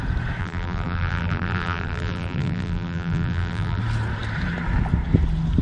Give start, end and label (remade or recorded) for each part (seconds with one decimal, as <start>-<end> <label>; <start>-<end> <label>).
0.0-0.4 recorded; 0.4-3.8 remade; 3.8-5.6 recorded